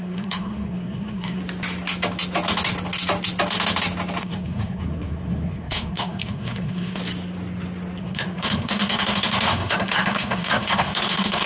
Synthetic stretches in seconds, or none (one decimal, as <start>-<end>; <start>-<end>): 0.0-1.4; 4.2-7.0; 8.0-11.5